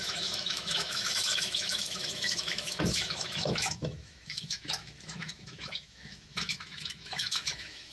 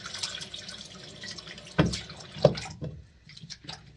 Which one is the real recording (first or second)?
second